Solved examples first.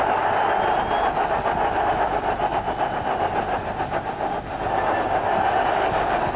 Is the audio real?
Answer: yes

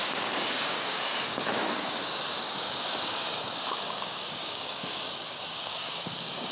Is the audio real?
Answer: no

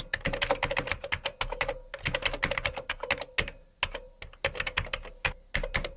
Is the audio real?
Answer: yes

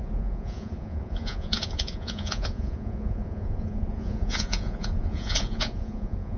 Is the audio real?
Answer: no